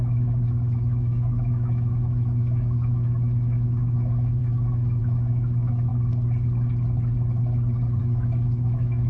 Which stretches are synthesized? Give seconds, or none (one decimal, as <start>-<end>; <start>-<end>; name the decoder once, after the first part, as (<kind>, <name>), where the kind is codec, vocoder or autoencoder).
0.0-5.9 (autoencoder, DAC-VAE); 8.0-9.1